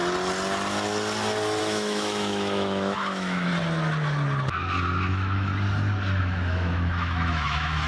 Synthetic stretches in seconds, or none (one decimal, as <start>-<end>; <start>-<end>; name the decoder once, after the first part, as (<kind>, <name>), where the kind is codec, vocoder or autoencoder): 1.6-3.5 (autoencoder, DAC-VAE); 5.1-5.5; 6.2-7.9